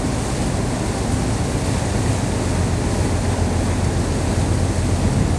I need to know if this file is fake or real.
real